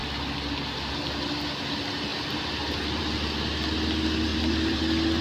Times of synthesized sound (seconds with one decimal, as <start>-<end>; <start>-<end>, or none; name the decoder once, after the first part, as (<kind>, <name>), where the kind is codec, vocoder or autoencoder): 4.3-4.8 (vocoder, BigVGAN v2)